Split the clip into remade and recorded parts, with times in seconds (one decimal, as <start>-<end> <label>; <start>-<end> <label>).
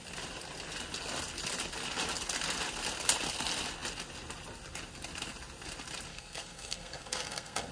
0.0-6.1 recorded; 6.1-7.7 remade